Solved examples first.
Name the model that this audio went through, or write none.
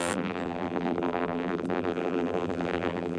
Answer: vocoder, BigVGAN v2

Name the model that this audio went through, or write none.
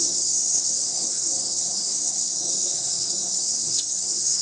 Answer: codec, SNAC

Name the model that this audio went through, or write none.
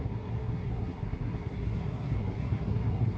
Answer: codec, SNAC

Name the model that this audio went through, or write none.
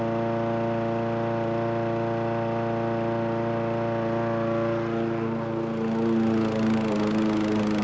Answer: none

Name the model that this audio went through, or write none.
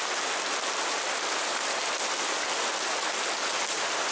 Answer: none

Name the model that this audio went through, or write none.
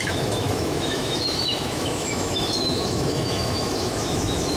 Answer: autoencoder, DAC-VAE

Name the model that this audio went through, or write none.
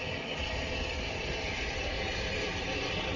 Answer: none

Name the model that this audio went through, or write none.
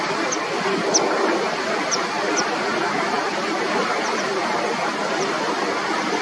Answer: none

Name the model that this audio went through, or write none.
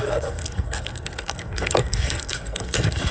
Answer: codec, SNAC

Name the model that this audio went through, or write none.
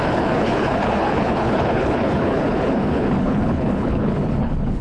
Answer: codec, HILCodec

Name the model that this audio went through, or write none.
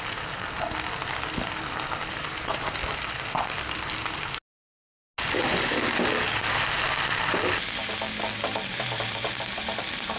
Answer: none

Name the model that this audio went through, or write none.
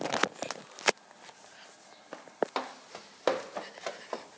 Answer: none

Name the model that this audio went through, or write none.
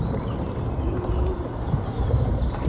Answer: vocoder, BigVGAN v2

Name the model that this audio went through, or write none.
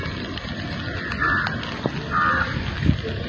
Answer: none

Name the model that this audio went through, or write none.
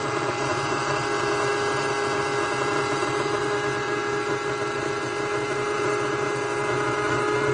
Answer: none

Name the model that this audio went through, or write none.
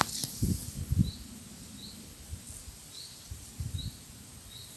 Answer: none